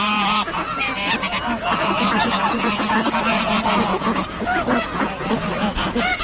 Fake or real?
fake